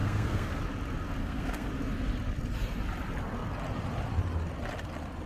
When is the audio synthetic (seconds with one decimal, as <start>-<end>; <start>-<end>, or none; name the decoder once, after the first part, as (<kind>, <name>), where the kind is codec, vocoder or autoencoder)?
0.0-0.6 (codec, SNAC); 1.2-1.7